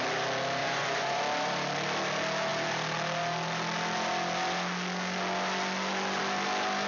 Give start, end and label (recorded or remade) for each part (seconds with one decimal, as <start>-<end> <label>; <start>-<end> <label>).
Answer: 0.0-0.6 recorded; 0.6-1.2 remade; 1.2-6.9 recorded